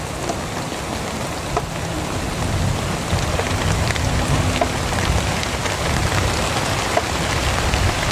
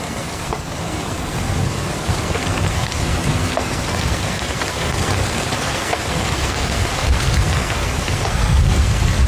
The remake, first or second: second